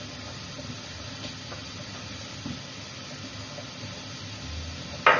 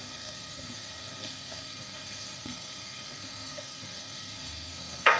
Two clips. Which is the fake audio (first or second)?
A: second